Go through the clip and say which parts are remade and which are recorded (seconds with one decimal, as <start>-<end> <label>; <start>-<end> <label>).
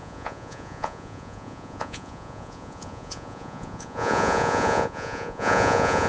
0.0-6.1 remade